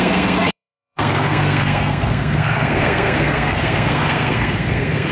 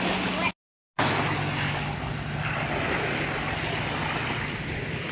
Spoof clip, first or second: first